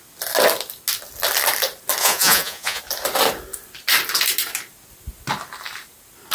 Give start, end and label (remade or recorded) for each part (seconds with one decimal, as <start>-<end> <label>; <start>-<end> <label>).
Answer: 0.0-2.0 recorded; 2.0-2.8 remade; 2.8-6.3 recorded